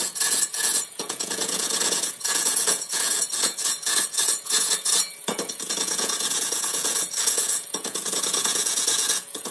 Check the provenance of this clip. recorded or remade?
remade